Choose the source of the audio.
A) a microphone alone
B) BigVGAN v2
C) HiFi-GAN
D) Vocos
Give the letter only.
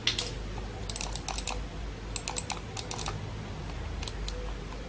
A